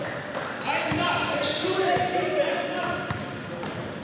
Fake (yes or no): no